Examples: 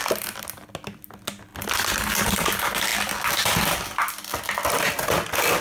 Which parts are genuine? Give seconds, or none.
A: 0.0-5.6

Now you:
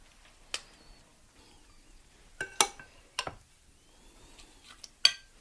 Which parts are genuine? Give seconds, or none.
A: 0.0-5.4

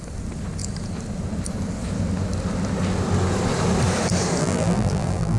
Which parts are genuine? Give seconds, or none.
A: 0.0-4.4

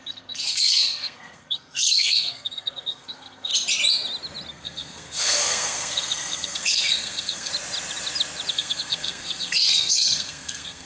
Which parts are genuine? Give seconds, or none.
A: 3.5-4.5; 7.5-8.5

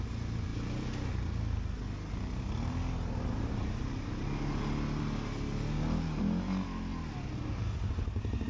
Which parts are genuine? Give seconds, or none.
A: 0.0-8.5